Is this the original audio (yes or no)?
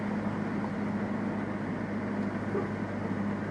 yes